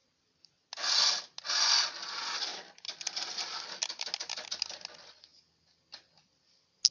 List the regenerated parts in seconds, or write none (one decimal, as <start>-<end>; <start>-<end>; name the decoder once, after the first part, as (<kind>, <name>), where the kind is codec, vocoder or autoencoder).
none